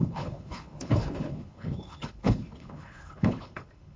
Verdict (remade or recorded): remade